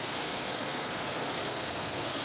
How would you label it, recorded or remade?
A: remade